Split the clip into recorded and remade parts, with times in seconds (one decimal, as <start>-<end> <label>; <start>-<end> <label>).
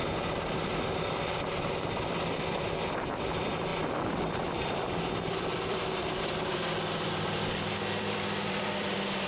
0.0-9.3 remade